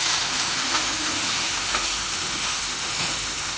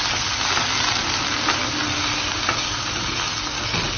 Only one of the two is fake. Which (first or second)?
first